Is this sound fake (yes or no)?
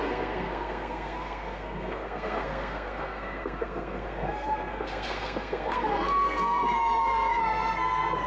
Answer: yes